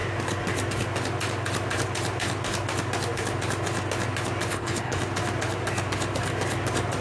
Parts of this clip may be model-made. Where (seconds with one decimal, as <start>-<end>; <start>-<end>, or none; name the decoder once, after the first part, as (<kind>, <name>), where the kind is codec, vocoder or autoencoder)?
4.5-5.0 (codec, HILCodec)